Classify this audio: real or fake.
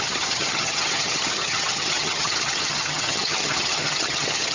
fake